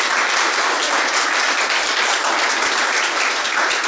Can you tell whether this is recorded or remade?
recorded